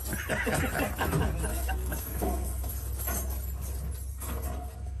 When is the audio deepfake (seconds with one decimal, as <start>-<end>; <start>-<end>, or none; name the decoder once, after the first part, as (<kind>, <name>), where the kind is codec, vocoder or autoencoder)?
1.5-2.7 (codec, SNAC); 4.1-5.0